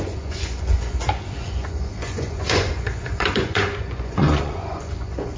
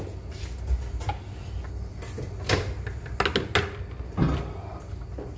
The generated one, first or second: first